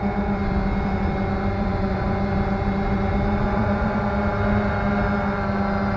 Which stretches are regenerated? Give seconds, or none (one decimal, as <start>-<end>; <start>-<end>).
1.6-2.2; 3.4-4.0